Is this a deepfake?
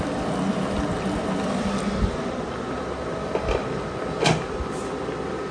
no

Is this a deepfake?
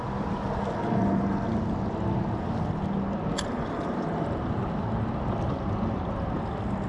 no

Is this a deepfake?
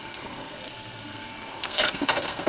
yes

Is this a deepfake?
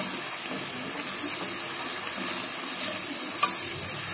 no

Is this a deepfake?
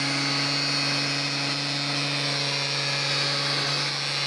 no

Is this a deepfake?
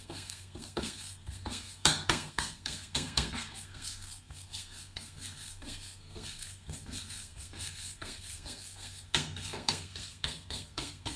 yes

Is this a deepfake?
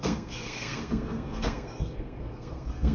yes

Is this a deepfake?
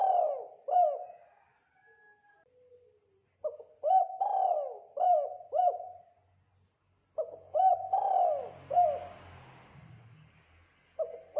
no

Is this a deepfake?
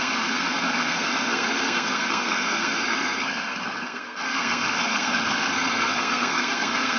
yes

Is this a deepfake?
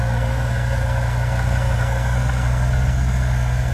yes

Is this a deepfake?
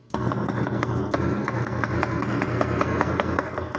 yes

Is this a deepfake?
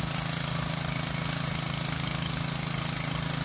no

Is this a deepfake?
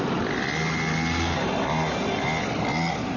no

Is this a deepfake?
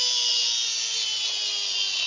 no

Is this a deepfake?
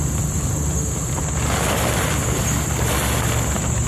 no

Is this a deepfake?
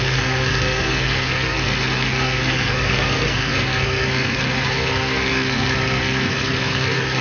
yes